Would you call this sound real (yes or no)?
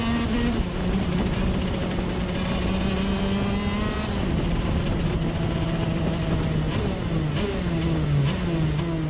yes